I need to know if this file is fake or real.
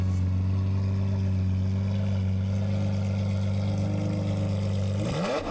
real